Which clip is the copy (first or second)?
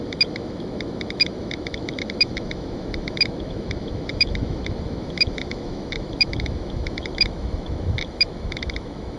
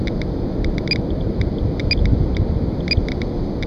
first